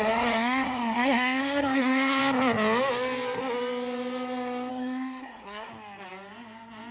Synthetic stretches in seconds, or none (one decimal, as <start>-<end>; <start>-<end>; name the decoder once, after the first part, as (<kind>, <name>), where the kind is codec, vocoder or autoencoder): 0.0-2.2 (codec, SNAC); 4.7-5.7